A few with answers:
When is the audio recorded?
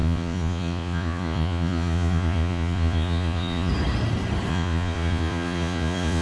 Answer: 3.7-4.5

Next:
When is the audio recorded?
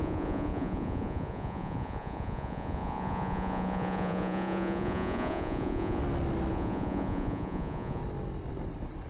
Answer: 6.0-6.5; 8.0-9.1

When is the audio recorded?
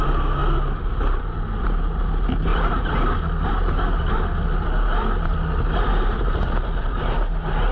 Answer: 0.0-7.7